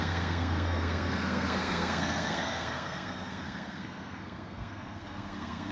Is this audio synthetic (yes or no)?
yes